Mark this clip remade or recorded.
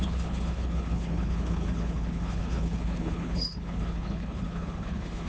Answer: remade